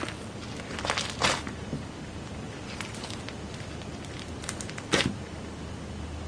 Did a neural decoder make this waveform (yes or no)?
no